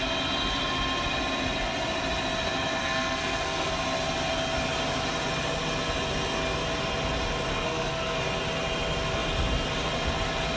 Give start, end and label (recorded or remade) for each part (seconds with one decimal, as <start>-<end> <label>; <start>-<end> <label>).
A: 0.0-2.8 recorded; 2.8-3.7 remade; 3.7-7.5 recorded; 7.5-8.2 remade; 8.2-10.6 recorded

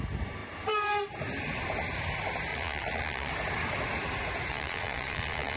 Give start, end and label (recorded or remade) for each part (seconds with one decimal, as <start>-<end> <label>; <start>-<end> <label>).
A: 0.0-2.5 recorded; 2.5-3.3 remade; 3.3-4.5 recorded; 4.5-5.6 remade

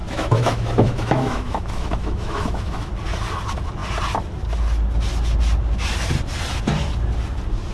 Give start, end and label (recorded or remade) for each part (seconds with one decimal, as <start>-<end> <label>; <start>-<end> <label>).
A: 0.0-2.9 remade; 2.9-7.7 recorded

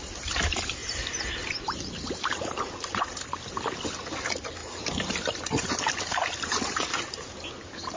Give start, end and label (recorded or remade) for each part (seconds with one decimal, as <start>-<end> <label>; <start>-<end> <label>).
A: 0.0-0.8 recorded; 0.8-3.1 remade; 3.1-4.6 recorded; 4.6-7.4 remade; 7.4-8.0 recorded

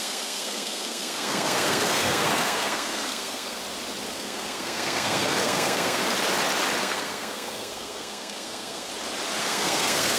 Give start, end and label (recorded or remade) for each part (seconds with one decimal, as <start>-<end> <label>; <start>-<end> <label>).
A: 0.0-3.6 remade; 3.6-4.1 recorded; 4.1-6.0 remade; 6.0-6.8 recorded; 6.8-8.9 remade; 8.9-9.4 recorded; 9.4-10.2 remade